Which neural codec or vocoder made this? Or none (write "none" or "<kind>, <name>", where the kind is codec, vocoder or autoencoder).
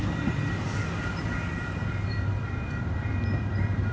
vocoder, BigVGAN v2